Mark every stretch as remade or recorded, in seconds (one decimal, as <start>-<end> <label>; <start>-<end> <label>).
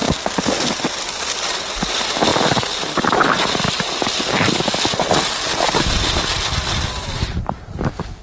0.0-8.2 recorded